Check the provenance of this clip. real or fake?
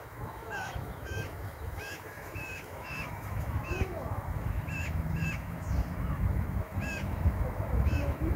fake